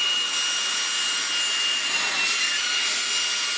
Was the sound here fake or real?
real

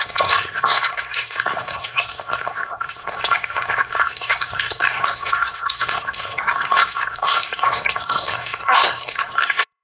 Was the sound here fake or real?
fake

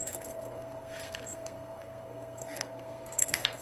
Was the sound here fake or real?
fake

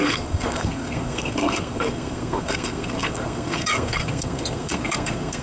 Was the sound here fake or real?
fake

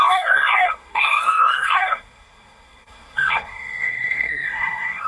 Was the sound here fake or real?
fake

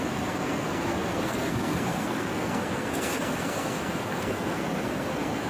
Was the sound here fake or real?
fake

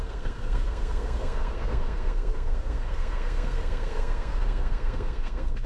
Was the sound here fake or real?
fake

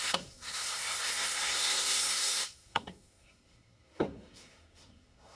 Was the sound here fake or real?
fake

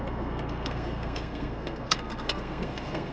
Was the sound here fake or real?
fake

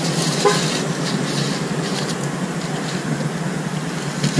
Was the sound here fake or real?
real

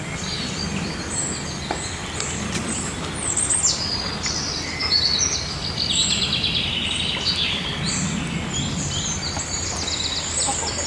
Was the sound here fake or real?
real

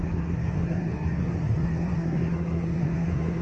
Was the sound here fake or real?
fake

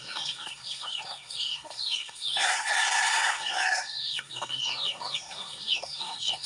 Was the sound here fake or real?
fake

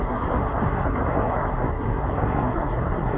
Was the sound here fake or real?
fake